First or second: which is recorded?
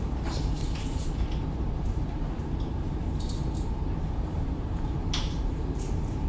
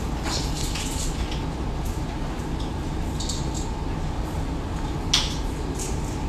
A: second